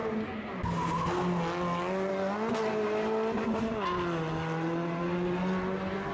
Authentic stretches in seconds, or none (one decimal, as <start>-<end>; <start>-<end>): 0.0-6.1

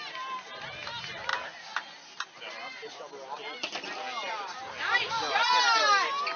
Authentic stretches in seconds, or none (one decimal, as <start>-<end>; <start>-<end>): 0.0-6.4